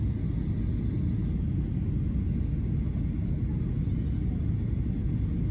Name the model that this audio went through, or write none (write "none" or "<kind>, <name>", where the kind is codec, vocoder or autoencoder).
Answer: none